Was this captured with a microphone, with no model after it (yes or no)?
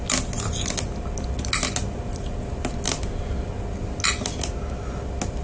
yes